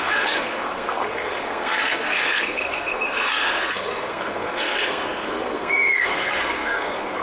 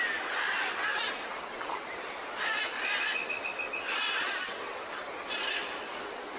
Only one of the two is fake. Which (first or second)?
first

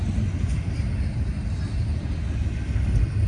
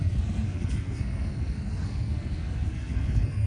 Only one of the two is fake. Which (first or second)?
second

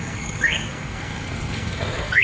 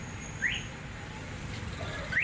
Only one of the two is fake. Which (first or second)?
first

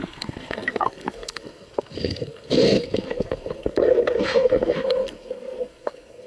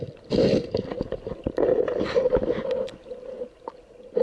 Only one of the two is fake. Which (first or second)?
first